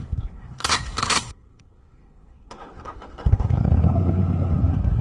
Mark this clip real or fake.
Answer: fake